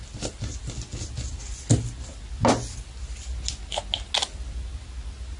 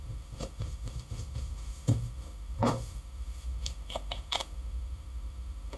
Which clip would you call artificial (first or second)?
second